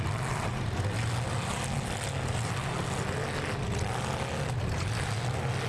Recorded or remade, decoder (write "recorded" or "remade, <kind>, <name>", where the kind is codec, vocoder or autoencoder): recorded